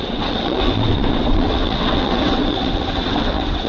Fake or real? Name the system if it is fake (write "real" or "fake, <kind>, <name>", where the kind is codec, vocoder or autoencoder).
fake, vocoder, WaveNeXt